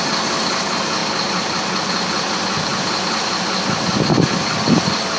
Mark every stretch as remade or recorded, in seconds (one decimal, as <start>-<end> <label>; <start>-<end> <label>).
0.0-5.2 recorded